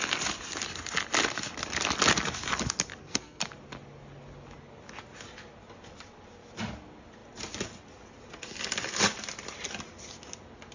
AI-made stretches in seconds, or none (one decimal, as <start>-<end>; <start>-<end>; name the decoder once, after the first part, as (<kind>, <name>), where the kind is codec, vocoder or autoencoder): 2.9-3.4 (codec, SNAC)